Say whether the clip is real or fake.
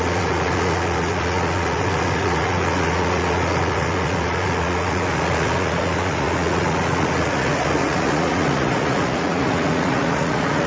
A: fake